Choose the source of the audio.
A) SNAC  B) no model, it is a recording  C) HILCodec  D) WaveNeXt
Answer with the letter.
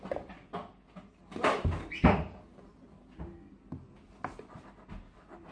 B